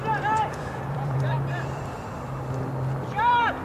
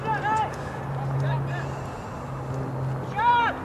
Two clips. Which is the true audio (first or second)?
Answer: second